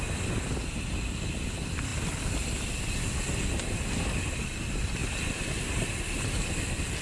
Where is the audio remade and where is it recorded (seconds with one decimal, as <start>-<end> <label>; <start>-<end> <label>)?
0.0-1.9 recorded; 1.9-2.7 remade; 2.7-5.0 recorded; 5.0-5.6 remade; 5.6-7.0 recorded